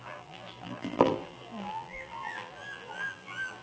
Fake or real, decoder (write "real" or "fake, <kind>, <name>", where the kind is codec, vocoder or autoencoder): fake, vocoder, BigVGAN v2